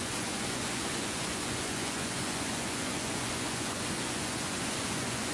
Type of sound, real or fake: fake